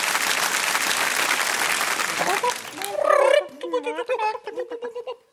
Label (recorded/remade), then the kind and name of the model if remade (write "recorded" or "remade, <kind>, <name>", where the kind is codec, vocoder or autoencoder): recorded